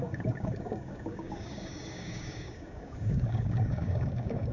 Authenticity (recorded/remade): remade